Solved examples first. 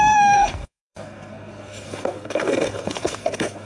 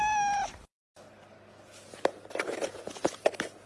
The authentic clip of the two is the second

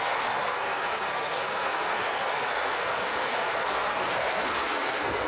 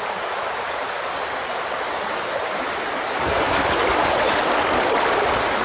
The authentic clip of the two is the second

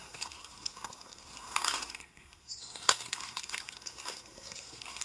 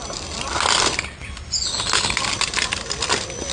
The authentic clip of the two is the second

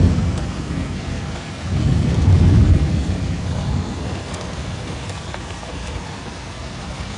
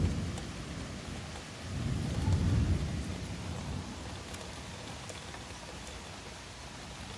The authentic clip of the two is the second